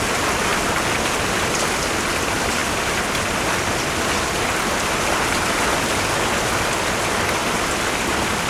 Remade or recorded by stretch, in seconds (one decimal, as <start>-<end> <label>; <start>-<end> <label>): 0.0-0.5 recorded; 0.5-1.3 remade; 1.3-2.6 recorded; 2.6-3.2 remade; 3.2-7.4 recorded; 7.4-8.5 remade